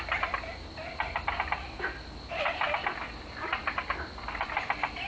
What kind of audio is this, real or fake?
real